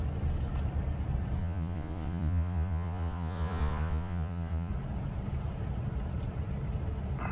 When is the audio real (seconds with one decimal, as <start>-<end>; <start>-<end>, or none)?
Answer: 0.0-1.4; 4.7-7.3